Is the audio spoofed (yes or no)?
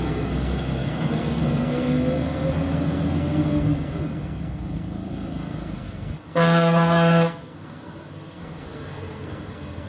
yes